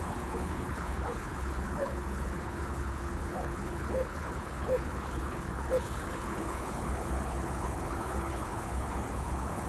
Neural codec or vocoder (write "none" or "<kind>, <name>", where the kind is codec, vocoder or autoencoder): codec, HILCodec